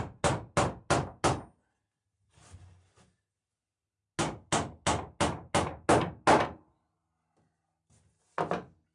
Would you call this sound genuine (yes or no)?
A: yes